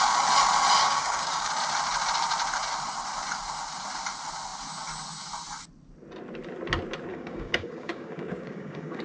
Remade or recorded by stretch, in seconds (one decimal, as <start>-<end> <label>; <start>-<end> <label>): 0.0-0.8 recorded; 0.8-1.5 remade; 1.5-7.1 recorded; 7.1-9.0 remade